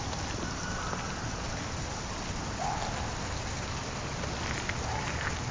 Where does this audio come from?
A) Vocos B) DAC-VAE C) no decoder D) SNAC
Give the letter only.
C